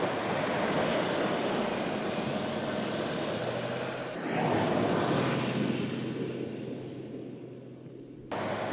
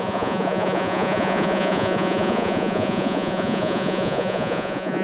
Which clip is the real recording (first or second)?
first